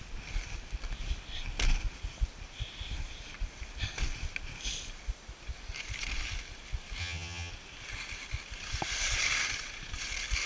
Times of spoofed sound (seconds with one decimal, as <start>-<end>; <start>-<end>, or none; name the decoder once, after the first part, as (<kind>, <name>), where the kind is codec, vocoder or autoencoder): 7.0-7.5 (vocoder, HiFi-GAN)